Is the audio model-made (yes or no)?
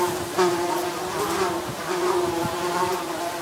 no